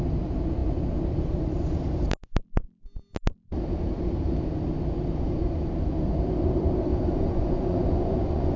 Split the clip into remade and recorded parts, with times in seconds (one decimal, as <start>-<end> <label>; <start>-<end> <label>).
0.0-6.9 recorded; 6.9-8.6 remade